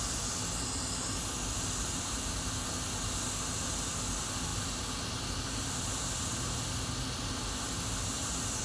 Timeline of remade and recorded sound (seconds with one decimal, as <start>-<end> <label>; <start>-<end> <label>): 0.0-8.6 recorded